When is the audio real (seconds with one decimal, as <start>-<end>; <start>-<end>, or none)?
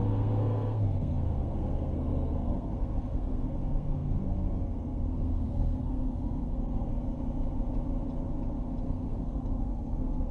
7.0-8.8